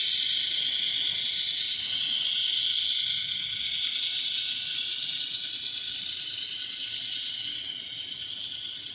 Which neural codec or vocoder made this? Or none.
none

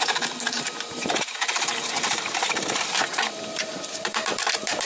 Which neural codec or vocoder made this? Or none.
vocoder, BigVGAN v2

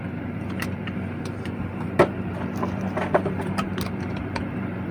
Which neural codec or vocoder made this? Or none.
vocoder, BigVGAN v2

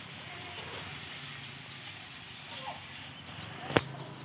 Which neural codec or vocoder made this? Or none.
none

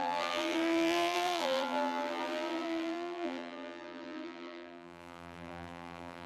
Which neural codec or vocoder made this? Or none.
vocoder, BigVGAN v2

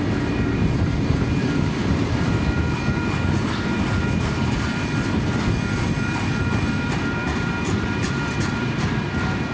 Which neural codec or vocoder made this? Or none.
vocoder, BigVGAN v2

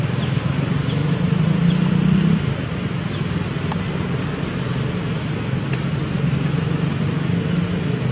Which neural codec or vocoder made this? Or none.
none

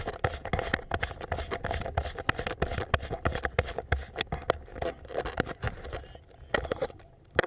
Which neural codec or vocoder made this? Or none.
none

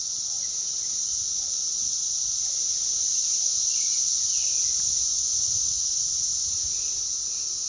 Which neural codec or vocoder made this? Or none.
vocoder, BigVGAN v2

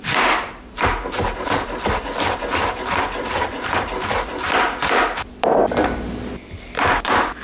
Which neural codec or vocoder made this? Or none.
vocoder, BigVGAN v2